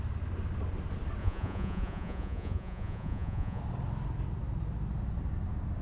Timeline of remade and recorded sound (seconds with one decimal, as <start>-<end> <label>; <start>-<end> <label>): 0.0-1.2 recorded; 1.2-3.6 remade; 3.6-5.8 recorded